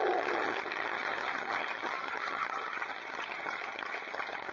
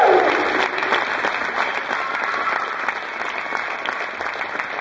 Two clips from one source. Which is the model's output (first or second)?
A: first